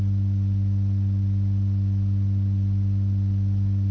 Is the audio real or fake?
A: real